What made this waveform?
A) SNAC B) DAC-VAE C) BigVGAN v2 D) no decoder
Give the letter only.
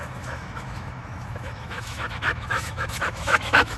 B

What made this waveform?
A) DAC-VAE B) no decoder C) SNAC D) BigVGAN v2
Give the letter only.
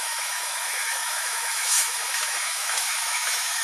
A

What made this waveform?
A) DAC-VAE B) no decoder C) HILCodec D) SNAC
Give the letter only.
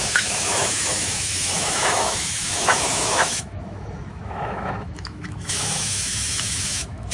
A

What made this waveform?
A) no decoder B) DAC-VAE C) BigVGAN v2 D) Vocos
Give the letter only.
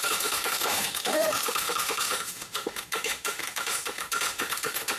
B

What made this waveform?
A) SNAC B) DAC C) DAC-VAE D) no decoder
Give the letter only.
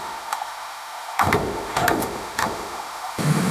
C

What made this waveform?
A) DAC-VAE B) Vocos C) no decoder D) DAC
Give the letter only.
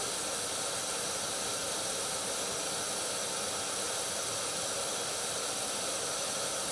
C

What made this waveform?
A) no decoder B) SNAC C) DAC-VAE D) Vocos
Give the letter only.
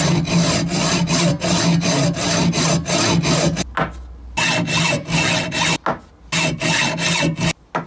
A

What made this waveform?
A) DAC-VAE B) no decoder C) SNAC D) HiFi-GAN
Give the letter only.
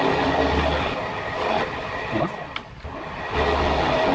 B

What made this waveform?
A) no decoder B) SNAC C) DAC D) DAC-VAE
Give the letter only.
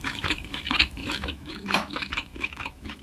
D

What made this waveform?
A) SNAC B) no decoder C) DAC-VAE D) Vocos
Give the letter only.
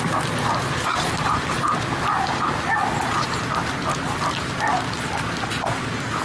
B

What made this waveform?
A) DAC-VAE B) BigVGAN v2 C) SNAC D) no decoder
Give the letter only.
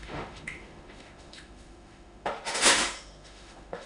A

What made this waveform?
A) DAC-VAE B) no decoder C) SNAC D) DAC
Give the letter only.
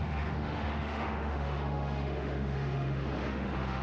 A